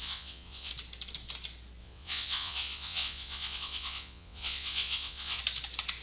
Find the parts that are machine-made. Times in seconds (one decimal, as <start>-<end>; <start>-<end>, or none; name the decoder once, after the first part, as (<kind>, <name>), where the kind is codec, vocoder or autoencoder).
0.0-0.7 (vocoder, WaveNeXt); 1.8-5.4

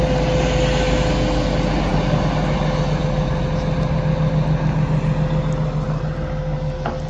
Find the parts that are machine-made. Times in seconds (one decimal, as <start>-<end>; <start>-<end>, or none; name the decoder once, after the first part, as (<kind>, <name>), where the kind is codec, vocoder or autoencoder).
none

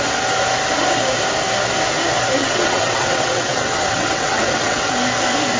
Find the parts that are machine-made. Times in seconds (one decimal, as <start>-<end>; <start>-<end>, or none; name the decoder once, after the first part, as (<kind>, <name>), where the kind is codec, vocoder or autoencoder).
2.4-4.9 (vocoder, WaveNeXt)

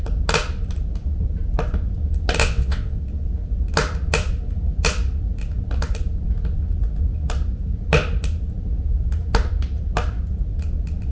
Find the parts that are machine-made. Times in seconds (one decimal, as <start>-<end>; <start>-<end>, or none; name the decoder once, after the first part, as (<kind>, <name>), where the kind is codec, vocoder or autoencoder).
2.4-3.0 (vocoder, WaveNeXt)

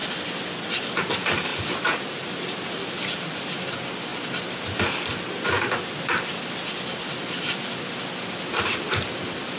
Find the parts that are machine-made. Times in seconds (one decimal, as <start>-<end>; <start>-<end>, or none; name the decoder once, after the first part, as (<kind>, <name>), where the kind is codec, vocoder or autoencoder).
none